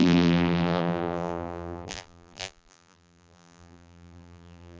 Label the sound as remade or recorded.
remade